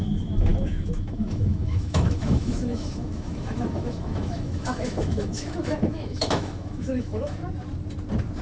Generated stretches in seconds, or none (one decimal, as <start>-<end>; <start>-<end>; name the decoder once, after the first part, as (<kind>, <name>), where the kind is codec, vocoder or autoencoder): 0.0-7.4 (autoencoder, DAC-VAE)